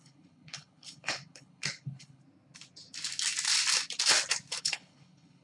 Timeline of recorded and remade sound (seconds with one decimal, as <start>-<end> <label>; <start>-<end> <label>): 0.0-2.2 remade; 2.2-4.6 recorded; 4.6-5.4 remade